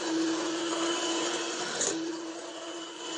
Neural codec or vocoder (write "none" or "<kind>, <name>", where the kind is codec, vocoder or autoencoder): vocoder, Vocos